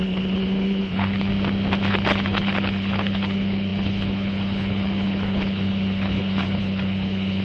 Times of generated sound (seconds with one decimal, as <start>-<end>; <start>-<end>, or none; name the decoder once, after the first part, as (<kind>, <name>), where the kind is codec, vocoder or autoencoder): 0.0-1.3 (codec, HILCodec); 1.9-7.4